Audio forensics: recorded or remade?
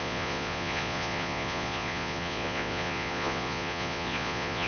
remade